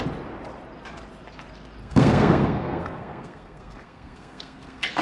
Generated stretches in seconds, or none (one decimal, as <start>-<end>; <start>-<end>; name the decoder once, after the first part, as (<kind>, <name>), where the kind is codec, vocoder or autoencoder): 1.8-5.0 (codec, SNAC)